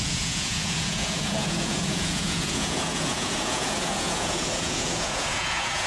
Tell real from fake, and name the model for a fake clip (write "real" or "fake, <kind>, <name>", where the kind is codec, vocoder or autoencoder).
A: fake, vocoder, Vocos